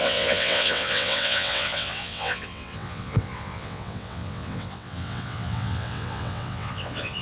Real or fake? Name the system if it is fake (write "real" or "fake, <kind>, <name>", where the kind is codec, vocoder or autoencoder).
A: fake, vocoder, WaveNeXt